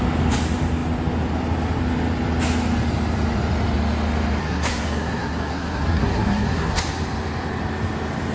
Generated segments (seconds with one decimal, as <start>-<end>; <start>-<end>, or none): 4.4-6.8